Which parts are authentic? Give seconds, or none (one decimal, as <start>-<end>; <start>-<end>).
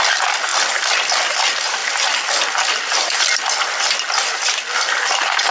0.0-5.5